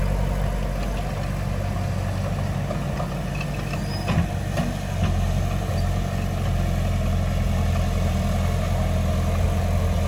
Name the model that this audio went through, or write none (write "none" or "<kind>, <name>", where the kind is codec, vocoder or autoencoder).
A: none